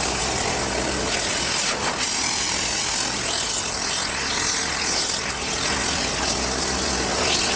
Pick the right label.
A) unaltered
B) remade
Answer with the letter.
A